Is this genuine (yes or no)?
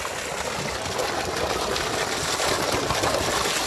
yes